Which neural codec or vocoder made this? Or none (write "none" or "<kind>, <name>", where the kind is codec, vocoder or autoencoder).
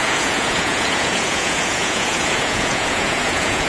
vocoder, Vocos